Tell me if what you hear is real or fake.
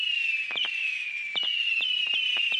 real